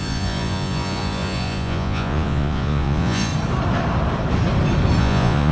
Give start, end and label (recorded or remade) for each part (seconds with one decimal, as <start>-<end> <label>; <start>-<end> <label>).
0.0-3.3 remade; 3.3-5.0 recorded; 5.0-5.5 remade